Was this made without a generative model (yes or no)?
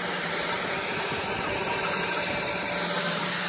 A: yes